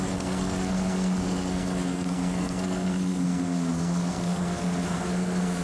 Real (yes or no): no